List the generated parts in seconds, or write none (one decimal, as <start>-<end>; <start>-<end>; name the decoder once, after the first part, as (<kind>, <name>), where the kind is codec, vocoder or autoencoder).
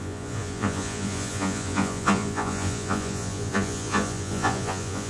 0.0-5.1 (vocoder, Vocos)